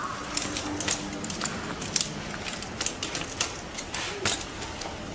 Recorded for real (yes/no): yes